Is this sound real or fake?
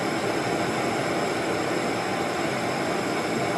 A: real